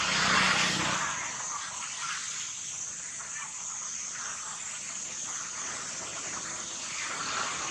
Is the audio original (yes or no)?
yes